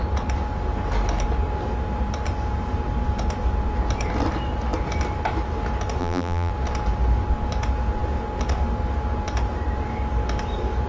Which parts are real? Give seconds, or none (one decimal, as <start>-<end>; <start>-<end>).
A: 0.0-6.0; 6.5-10.9